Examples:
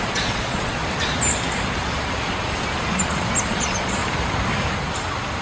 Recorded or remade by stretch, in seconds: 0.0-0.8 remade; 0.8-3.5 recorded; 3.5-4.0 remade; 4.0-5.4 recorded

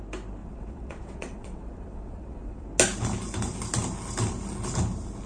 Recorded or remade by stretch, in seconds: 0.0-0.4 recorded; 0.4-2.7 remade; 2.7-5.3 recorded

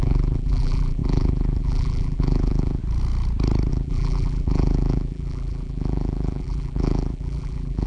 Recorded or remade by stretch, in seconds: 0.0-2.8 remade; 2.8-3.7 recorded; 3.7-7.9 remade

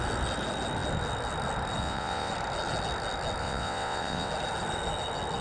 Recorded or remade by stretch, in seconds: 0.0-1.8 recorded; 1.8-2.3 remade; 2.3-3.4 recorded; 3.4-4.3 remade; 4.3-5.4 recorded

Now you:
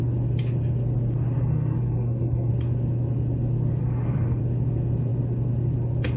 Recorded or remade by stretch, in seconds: 0.0-1.4 recorded; 1.4-2.5 remade; 2.5-3.8 recorded; 3.8-4.4 remade; 4.4-6.2 recorded

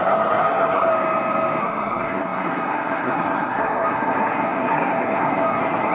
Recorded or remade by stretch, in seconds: 0.0-0.9 remade; 0.9-1.6 recorded; 1.6-5.9 remade

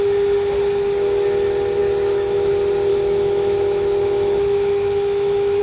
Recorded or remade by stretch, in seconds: 0.0-1.8 recorded; 1.8-2.5 remade; 2.5-2.9 recorded; 2.9-5.6 remade

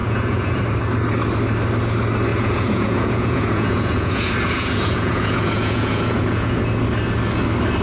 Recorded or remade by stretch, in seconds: 0.0-0.6 remade; 0.6-2.3 recorded; 2.3-6.6 remade; 6.6-7.8 recorded